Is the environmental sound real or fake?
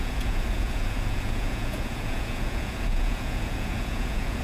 fake